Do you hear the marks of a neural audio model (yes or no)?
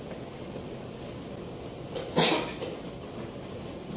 no